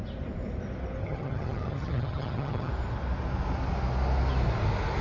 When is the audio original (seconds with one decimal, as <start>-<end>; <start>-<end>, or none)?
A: 0.0-1.0; 2.7-5.0